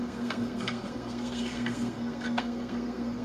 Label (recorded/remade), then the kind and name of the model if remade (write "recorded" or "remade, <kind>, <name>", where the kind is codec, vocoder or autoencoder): remade, codec, SNAC